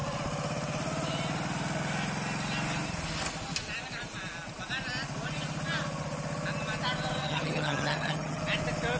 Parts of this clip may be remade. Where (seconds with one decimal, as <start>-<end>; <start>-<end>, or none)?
7.2-8.4